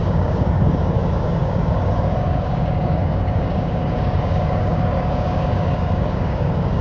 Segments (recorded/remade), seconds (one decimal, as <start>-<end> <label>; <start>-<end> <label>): 0.0-6.8 remade